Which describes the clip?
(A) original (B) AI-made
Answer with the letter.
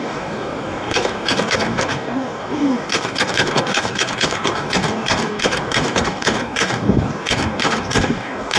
B